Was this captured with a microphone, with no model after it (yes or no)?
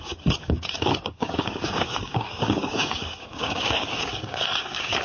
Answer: no